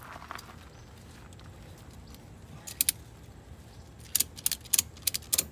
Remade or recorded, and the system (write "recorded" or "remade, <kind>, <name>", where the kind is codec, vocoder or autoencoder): recorded